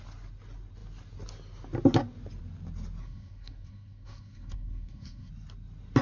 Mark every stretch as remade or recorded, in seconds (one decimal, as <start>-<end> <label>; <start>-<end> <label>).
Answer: 0.0-3.0 recorded; 3.0-5.3 remade; 5.3-6.0 recorded